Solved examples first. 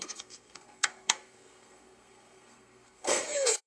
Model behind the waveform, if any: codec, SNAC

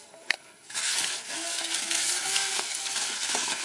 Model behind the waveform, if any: codec, SNAC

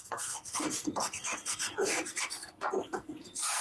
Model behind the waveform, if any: codec, SNAC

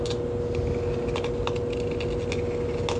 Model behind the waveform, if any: none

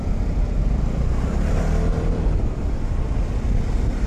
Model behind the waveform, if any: none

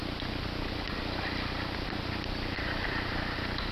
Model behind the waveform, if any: none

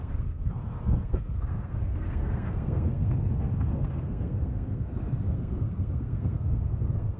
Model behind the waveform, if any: codec, SNAC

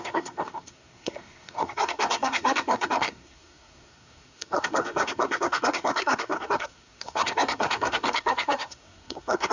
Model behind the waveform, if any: codec, SNAC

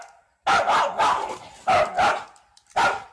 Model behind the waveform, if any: none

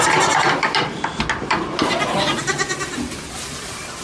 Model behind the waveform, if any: none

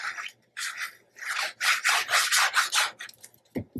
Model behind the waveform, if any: none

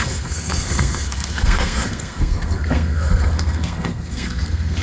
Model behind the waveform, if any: codec, SNAC